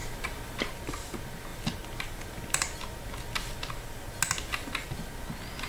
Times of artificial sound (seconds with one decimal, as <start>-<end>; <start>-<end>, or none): none